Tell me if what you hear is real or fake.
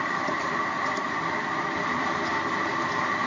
fake